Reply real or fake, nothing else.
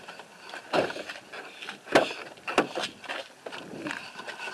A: real